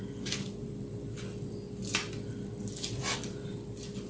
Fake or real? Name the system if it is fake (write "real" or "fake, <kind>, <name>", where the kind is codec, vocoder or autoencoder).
real